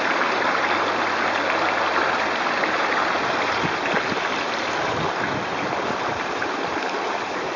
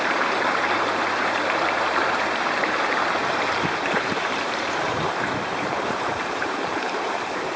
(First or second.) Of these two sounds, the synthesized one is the second